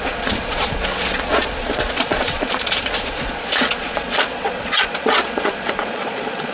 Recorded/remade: remade